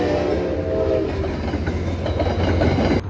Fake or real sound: real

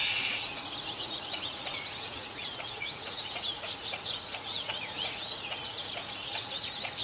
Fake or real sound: fake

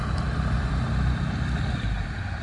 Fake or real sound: real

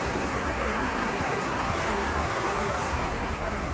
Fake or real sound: fake